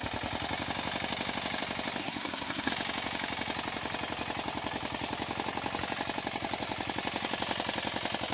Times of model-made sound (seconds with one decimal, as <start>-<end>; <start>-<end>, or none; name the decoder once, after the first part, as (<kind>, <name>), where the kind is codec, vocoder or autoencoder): 2.0-2.7 (codec, SNAC)